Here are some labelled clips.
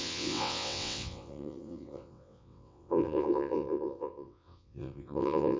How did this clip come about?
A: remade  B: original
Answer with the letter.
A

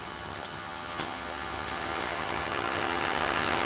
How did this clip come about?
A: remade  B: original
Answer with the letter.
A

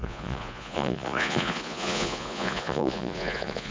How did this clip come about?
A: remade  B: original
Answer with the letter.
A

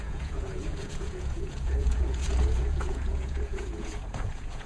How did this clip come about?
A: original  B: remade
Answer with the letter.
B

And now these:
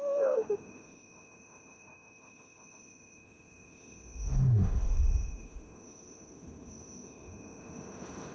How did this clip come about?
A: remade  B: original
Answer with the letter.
A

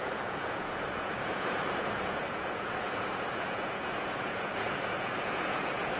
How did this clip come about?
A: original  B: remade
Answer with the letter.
B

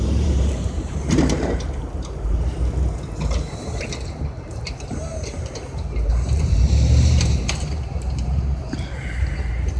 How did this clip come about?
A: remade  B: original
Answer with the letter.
A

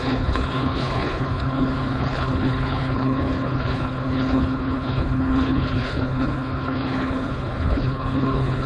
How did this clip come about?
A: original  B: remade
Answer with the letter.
B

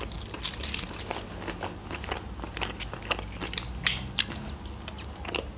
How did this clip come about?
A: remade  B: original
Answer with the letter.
B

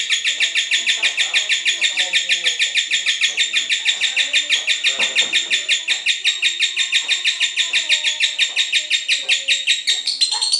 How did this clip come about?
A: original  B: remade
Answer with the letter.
A